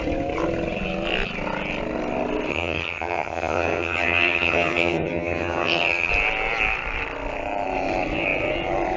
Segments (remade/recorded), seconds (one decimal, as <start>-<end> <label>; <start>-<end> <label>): 0.0-2.5 recorded; 2.5-6.1 remade; 6.1-9.0 recorded